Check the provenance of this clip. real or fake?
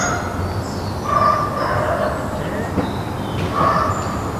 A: real